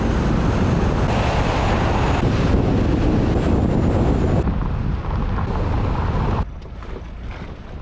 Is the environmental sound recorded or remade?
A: recorded